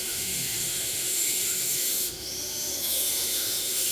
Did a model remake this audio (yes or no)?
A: yes